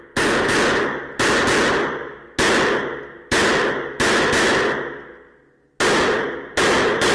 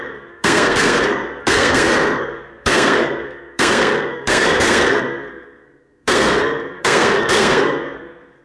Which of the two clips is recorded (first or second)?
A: first